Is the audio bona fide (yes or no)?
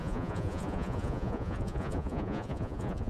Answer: no